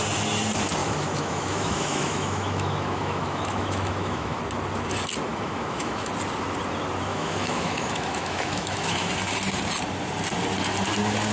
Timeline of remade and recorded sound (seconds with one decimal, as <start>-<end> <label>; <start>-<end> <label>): 0.0-0.8 recorded; 0.8-4.4 remade; 4.4-5.3 recorded; 5.3-6.1 remade; 6.1-7.1 recorded; 7.1-9.1 remade; 9.1-11.3 recorded